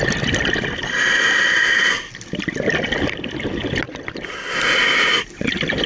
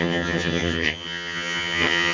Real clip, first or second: first